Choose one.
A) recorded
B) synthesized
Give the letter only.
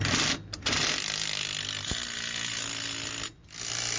A